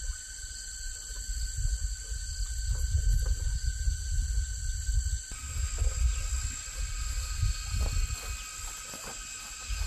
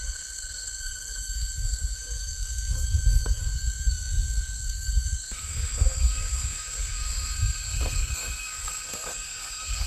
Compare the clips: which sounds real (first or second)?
first